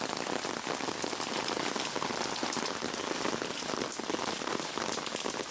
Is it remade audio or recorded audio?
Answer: recorded